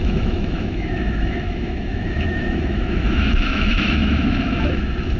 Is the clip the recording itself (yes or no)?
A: no